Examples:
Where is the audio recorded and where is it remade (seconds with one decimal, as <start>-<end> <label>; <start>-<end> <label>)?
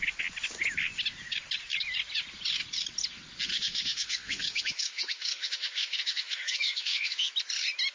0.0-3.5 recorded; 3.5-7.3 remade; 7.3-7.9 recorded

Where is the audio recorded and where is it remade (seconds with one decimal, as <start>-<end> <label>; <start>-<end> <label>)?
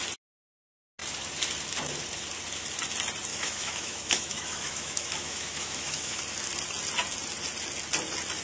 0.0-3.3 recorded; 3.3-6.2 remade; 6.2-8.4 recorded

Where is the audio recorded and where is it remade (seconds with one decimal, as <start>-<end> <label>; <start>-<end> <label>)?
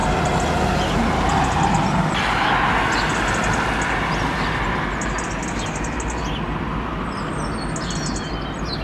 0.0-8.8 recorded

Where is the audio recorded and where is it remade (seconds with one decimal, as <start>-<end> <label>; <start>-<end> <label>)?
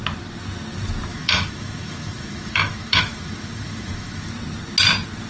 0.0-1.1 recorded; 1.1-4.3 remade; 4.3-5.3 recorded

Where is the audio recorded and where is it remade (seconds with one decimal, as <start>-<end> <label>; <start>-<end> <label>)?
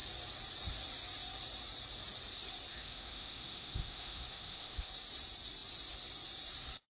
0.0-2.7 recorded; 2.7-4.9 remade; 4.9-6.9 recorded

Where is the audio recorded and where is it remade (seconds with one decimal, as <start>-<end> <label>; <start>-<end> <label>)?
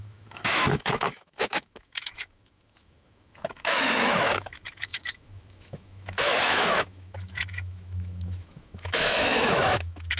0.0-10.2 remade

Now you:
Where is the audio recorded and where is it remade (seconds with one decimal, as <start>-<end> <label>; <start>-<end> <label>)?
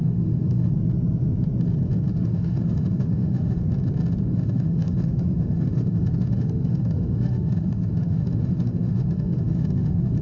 0.0-0.7 remade; 0.7-2.1 recorded; 2.1-3.6 remade; 3.6-4.2 recorded; 4.2-10.2 remade